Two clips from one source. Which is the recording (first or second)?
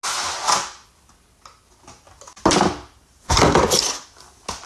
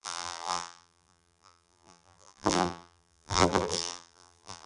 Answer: first